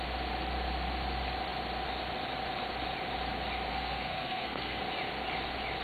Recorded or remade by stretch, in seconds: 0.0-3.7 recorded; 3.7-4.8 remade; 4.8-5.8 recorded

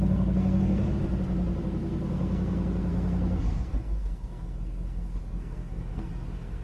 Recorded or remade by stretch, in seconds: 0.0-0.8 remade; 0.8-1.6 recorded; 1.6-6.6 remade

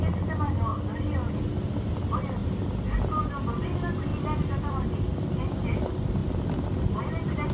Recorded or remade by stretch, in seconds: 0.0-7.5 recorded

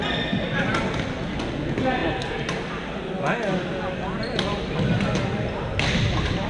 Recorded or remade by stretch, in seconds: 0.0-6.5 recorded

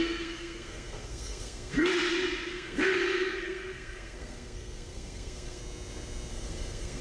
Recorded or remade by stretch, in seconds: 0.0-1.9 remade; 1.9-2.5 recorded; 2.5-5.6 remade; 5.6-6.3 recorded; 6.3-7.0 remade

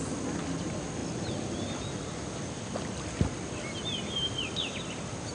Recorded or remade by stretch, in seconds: 0.0-5.3 recorded

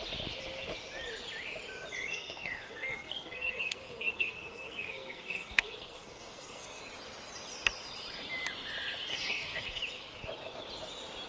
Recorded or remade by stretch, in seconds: 0.0-2.1 recorded; 2.1-6.8 remade; 6.8-9.1 recorded; 9.1-9.8 remade; 9.8-11.3 recorded